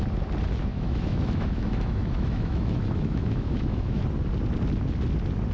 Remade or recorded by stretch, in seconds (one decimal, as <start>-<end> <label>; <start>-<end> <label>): 0.0-0.7 recorded; 0.7-4.0 remade; 4.0-5.5 recorded